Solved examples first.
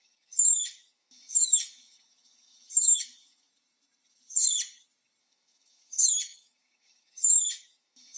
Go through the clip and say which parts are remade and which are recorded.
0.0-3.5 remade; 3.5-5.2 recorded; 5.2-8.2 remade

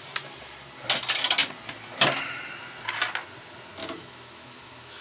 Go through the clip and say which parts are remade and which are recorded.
0.0-3.8 recorded; 3.8-5.0 remade

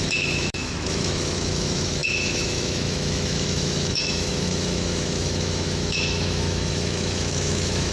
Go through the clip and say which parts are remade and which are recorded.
0.0-7.9 remade

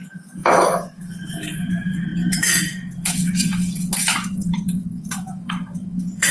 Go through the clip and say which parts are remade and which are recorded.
0.0-6.3 remade

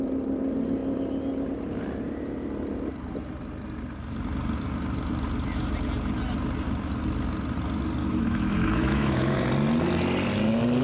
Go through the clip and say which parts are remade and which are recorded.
0.0-8.0 recorded; 8.0-9.4 remade; 9.4-10.8 recorded

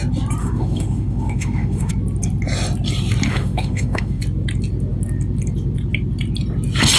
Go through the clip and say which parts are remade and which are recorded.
0.0-0.4 recorded; 0.4-1.9 remade; 1.9-3.3 recorded; 3.3-4.2 remade; 4.2-7.0 recorded